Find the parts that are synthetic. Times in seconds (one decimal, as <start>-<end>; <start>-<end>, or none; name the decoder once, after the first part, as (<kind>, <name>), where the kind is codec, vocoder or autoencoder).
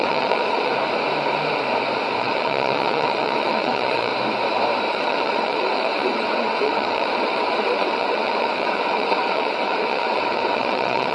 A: 0.0-0.7 (vocoder, WaveNeXt); 2.2-4.1; 4.9-11.1